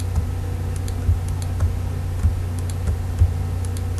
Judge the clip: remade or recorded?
recorded